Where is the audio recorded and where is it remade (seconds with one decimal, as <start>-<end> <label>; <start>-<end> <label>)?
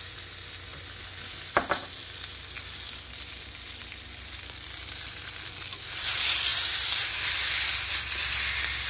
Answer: 0.0-8.9 recorded